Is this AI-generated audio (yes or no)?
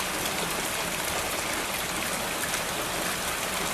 no